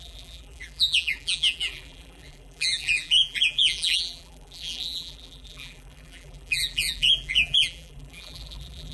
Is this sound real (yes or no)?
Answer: no